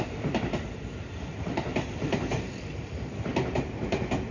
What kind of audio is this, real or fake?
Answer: real